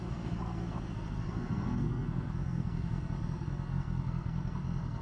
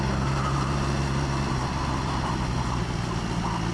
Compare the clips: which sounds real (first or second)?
second